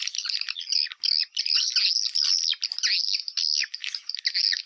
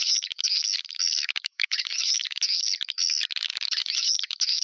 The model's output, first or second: second